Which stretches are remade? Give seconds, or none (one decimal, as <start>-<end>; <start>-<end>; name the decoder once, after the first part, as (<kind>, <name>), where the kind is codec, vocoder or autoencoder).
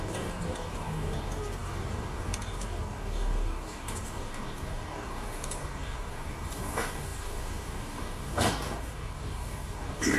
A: 0.0-10.2 (codec, DAC)